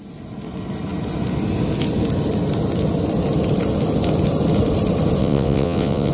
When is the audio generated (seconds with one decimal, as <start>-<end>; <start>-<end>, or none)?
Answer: 5.2-6.1